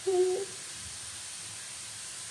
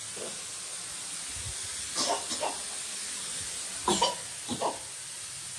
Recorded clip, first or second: second